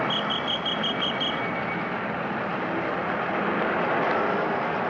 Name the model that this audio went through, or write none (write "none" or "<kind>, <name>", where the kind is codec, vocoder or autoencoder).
none